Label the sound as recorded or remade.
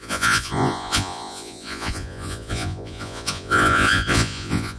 remade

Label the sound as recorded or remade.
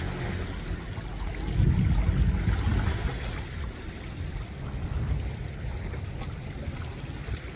recorded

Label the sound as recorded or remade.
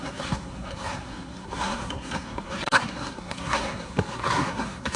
remade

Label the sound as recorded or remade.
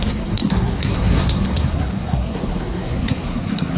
remade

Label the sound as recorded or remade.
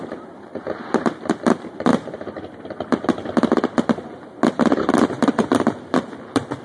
recorded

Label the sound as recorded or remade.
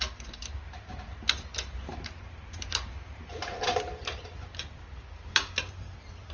remade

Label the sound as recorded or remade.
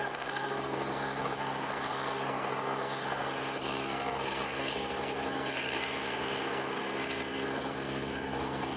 remade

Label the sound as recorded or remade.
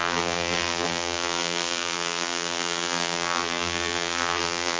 remade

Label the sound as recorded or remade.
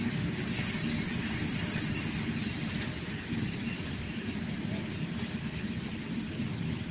recorded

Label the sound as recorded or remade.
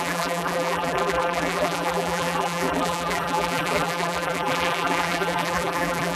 remade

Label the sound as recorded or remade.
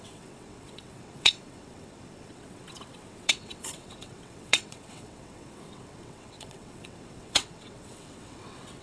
remade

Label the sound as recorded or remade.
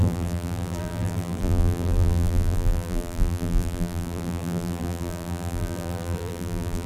remade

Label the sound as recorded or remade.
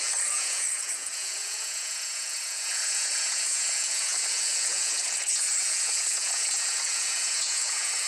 remade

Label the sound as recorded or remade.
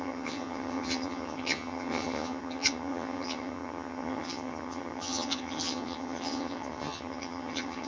remade